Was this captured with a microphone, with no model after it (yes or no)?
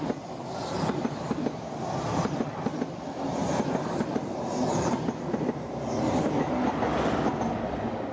yes